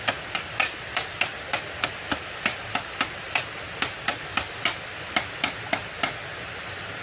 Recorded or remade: recorded